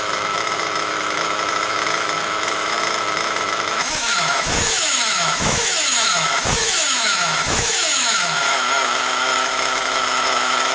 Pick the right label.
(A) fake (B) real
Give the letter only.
A